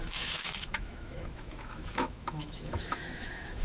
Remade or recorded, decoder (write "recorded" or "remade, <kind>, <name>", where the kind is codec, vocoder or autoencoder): remade, autoencoder, DAC-VAE